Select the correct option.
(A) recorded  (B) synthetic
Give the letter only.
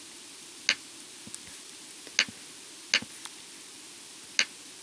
A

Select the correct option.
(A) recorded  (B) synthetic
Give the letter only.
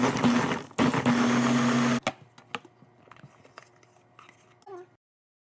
A